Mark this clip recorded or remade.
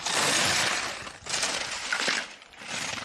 remade